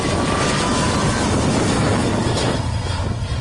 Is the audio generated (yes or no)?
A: no